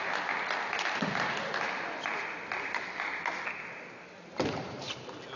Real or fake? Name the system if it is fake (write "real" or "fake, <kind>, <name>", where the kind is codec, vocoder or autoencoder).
real